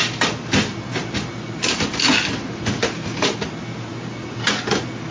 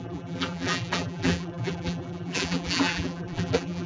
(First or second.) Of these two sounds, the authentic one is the first